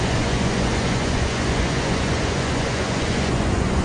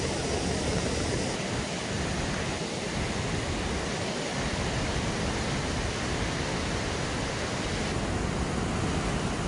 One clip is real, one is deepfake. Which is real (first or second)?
second